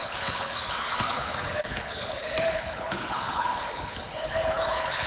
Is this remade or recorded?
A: remade